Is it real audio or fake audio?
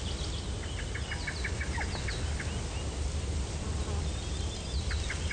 real